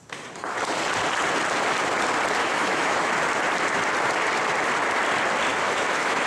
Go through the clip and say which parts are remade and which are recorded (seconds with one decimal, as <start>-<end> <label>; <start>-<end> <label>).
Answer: 0.0-2.4 recorded; 2.4-3.1 remade; 3.1-5.5 recorded; 5.5-6.3 remade